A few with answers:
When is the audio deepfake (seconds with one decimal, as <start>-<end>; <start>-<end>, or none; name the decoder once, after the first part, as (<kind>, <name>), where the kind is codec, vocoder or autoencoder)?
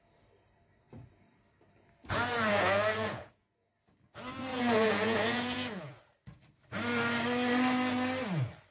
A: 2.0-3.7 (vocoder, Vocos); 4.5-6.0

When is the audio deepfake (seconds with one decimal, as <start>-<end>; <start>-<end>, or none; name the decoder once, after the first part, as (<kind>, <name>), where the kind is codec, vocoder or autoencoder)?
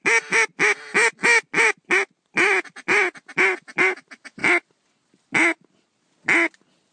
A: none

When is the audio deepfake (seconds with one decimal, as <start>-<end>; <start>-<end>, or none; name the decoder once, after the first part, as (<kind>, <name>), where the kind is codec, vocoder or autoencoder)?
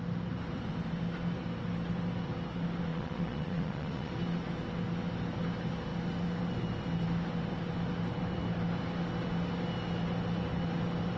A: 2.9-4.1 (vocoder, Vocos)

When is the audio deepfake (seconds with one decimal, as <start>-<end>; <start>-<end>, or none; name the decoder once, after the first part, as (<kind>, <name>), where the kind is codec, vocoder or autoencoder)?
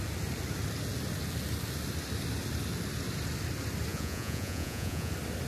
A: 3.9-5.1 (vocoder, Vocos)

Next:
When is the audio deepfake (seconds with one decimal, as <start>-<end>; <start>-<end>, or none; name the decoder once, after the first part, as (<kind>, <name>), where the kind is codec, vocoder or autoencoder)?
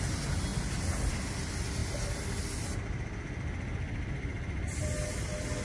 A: none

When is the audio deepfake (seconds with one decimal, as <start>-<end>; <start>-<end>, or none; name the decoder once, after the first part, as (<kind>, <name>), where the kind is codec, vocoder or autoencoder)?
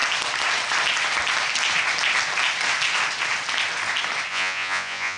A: 4.3-5.2 (vocoder, Vocos)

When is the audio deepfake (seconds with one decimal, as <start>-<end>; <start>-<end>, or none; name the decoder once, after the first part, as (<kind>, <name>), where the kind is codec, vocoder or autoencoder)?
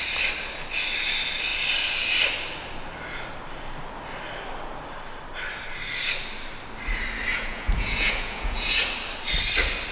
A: 7.3-8.8 (vocoder, Vocos)